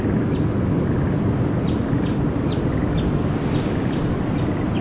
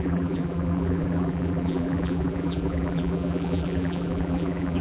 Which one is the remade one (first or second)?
second